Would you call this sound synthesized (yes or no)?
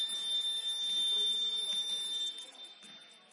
no